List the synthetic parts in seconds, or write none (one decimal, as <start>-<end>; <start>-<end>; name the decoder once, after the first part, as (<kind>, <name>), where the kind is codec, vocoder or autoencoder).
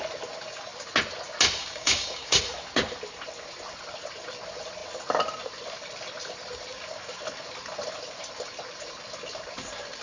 1.6-2.4 (codec, DAC)